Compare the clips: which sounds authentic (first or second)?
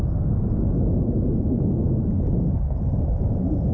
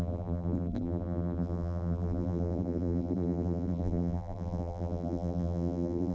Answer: first